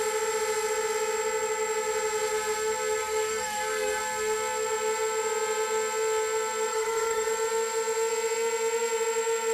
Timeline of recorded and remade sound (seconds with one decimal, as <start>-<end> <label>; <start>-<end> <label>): 0.0-3.0 recorded; 3.0-4.0 remade; 4.0-6.7 recorded; 6.7-7.3 remade; 7.3-9.5 recorded